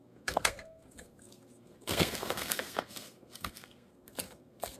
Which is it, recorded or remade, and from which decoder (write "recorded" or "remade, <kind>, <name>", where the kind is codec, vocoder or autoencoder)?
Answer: remade, codec, SNAC